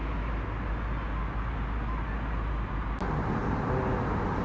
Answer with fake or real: real